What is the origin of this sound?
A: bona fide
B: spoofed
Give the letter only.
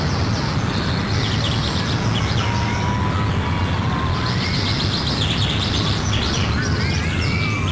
A